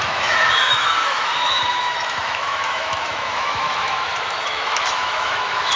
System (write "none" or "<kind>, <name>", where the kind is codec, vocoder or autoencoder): autoencoder, DAC-VAE